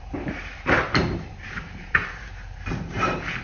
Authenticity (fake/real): fake